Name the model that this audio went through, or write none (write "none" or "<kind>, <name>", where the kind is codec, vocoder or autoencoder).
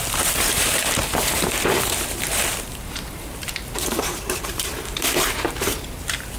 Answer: vocoder, BigVGAN v2